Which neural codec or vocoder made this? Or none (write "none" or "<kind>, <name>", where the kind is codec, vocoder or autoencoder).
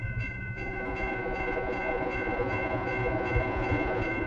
vocoder, Vocos